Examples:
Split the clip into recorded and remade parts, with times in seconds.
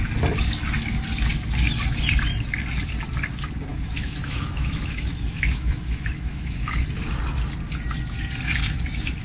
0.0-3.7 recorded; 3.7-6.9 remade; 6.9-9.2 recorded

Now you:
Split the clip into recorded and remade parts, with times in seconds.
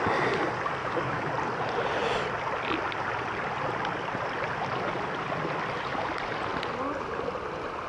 0.0-0.8 recorded; 0.8-1.3 remade; 1.3-7.9 recorded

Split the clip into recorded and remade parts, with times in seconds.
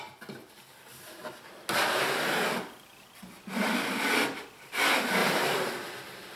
0.0-5.2 recorded; 5.2-5.7 remade; 5.7-6.4 recorded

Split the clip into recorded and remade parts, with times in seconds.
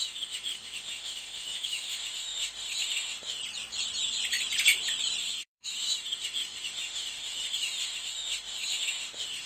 0.0-3.4 remade; 3.4-5.2 recorded; 5.2-9.5 remade